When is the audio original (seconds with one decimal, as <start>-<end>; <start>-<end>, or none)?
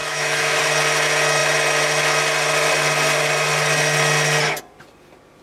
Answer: 0.7-5.4